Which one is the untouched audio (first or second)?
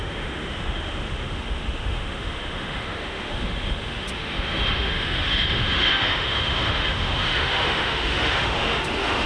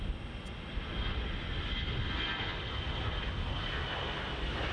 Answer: second